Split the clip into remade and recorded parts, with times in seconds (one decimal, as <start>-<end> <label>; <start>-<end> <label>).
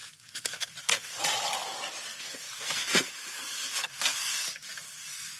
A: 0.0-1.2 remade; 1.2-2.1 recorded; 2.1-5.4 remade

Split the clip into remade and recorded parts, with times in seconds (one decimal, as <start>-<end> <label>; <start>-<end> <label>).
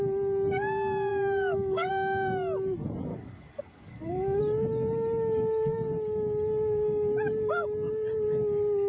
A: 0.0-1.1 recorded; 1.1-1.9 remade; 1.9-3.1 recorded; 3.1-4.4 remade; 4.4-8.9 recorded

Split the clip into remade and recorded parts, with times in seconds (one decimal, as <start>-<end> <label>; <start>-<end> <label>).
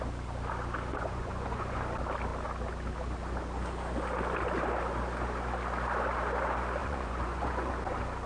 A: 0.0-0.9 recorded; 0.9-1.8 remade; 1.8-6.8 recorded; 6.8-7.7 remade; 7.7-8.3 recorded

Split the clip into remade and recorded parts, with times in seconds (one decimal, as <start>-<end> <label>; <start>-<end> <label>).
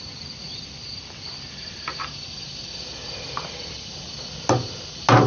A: 0.0-5.3 recorded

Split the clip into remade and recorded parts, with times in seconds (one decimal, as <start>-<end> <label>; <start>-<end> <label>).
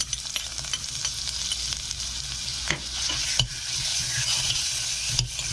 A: 0.0-2.5 recorded; 2.5-3.3 remade; 3.3-3.9 recorded; 3.9-5.1 remade; 5.1-5.5 recorded